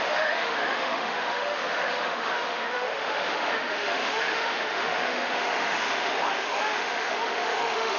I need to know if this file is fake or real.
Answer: fake